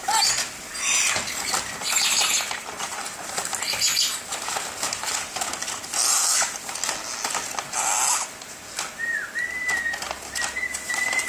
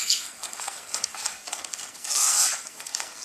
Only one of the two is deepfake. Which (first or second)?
second